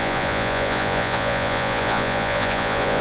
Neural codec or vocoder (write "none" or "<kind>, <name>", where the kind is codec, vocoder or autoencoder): vocoder, Vocos